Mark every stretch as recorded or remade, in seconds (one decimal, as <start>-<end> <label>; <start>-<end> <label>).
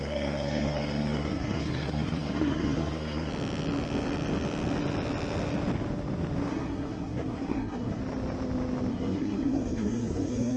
0.0-3.3 remade; 3.3-6.5 recorded; 6.5-8.0 remade; 8.0-8.9 recorded; 8.9-10.6 remade